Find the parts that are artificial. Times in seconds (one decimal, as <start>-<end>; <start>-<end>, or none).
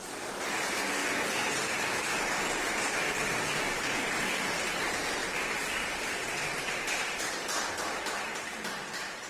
1.0-3.5; 5.2-7.2